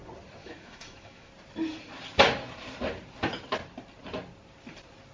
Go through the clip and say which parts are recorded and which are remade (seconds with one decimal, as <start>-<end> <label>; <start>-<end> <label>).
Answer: 0.0-0.4 recorded; 0.4-1.3 remade; 1.3-5.1 recorded